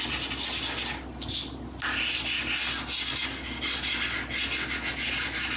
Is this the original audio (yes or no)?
yes